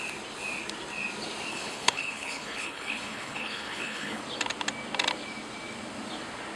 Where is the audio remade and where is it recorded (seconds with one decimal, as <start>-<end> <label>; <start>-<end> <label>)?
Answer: 0.0-1.5 recorded; 1.5-4.2 remade; 4.2-6.6 recorded